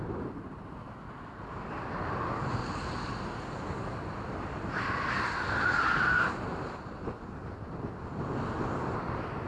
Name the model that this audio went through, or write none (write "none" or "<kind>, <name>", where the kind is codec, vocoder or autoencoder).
none